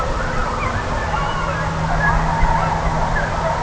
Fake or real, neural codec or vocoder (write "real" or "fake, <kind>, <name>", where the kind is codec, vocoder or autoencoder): real